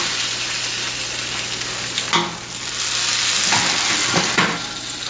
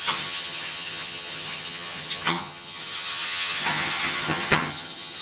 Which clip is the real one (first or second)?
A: first